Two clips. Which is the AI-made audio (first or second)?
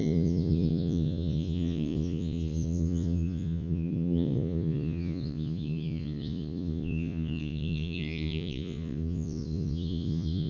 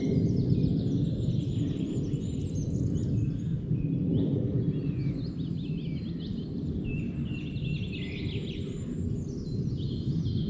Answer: first